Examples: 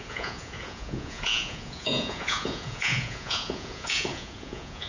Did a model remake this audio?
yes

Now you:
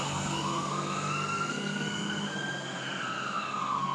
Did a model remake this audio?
yes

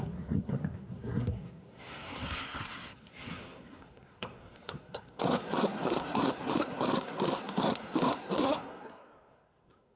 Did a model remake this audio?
yes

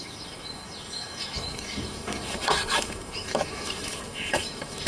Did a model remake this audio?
yes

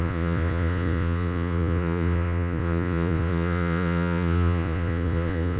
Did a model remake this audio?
yes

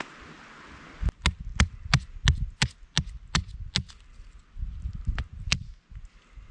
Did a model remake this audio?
no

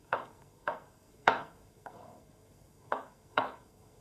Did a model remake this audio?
yes